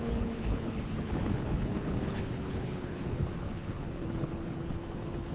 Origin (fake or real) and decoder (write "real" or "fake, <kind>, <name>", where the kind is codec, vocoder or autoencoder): fake, codec, HILCodec